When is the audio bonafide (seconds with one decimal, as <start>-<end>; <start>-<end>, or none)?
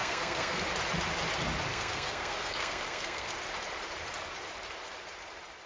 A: 0.6-1.7; 3.3-5.7